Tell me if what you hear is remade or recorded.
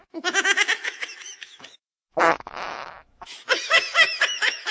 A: remade